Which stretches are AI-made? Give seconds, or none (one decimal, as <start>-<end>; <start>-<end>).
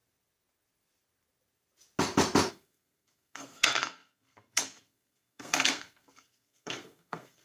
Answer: 2.5-7.4